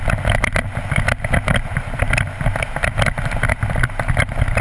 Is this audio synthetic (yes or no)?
no